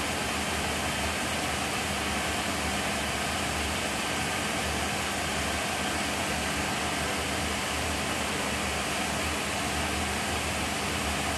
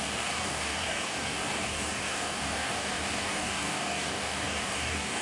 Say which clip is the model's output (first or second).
second